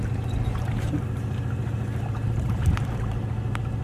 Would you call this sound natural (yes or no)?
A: no